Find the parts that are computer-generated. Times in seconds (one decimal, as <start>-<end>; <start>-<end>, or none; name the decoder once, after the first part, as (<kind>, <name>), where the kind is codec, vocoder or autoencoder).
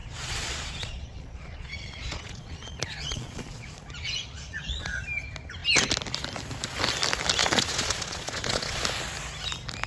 0.0-5.0 (vocoder, Vocos); 7.4-8.8